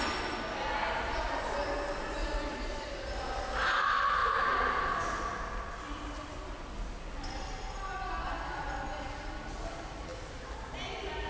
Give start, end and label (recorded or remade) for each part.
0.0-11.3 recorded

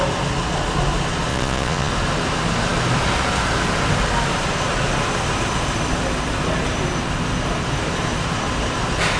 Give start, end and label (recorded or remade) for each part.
0.0-1.3 recorded; 1.3-1.9 remade; 1.9-9.2 recorded